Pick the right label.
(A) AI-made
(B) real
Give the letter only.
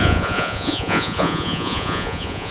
A